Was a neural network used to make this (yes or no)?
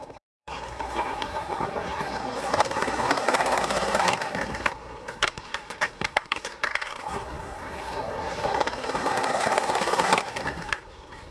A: yes